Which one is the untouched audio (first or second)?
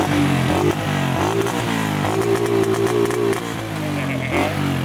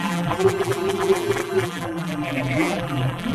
first